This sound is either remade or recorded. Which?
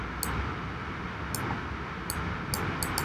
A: recorded